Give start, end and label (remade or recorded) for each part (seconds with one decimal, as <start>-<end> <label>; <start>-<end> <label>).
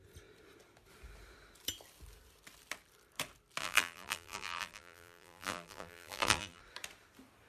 0.0-3.6 recorded; 3.6-6.6 remade; 6.6-7.5 recorded